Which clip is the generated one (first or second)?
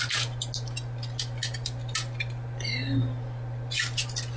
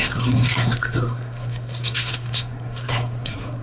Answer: second